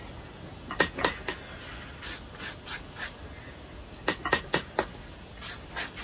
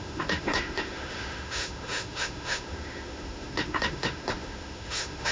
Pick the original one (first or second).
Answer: first